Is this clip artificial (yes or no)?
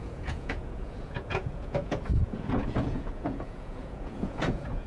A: yes